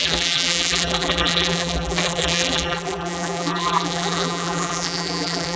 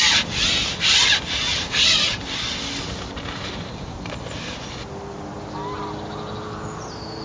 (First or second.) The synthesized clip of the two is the first